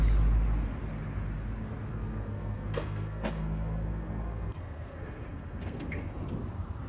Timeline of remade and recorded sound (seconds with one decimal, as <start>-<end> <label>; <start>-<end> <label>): 0.0-1.9 recorded; 1.9-6.0 remade; 6.0-6.9 recorded